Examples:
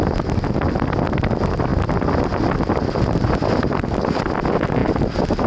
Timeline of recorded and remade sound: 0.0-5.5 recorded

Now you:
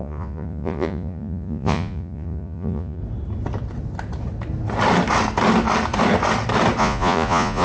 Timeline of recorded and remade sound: 0.0-3.0 remade; 3.0-6.8 recorded; 6.8-7.6 remade

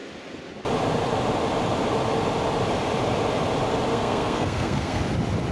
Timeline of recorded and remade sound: 0.0-3.9 recorded; 3.9-5.0 remade; 5.0-5.5 recorded

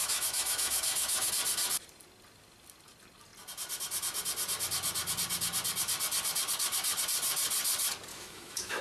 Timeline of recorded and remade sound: 0.0-1.3 remade; 1.3-8.1 recorded; 8.1-8.8 remade

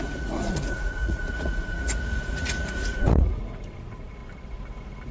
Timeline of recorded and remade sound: 0.0-4.2 remade; 4.2-5.1 recorded

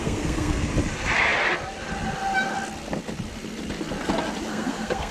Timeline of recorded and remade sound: 0.0-0.7 remade; 0.7-4.5 recorded; 4.5-5.1 remade